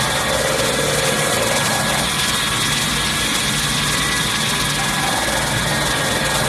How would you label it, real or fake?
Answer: real